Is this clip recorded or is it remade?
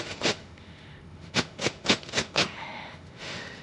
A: remade